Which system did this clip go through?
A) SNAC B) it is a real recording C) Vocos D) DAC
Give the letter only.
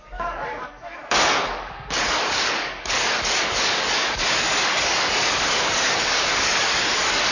D